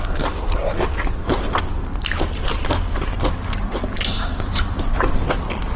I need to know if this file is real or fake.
real